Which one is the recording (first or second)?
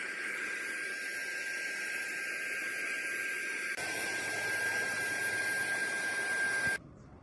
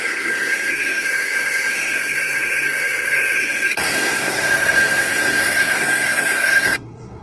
first